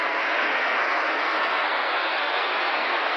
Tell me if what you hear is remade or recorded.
remade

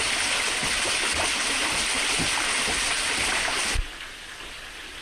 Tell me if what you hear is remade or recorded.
recorded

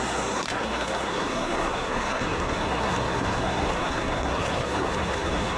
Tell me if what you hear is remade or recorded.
remade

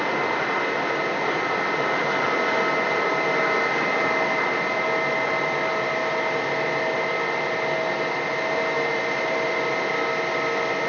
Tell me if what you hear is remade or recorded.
recorded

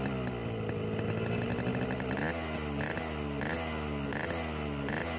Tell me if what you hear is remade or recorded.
recorded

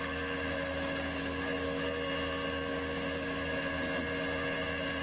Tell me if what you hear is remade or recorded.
recorded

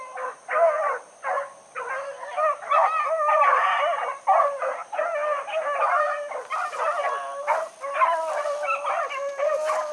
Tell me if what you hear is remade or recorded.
recorded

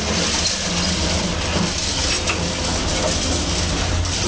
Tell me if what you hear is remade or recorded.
recorded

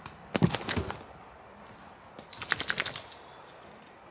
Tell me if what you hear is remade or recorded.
recorded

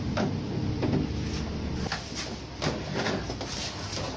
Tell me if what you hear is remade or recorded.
recorded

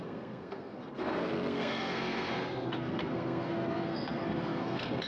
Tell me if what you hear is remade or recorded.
remade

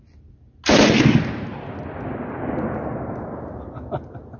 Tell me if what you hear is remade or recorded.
recorded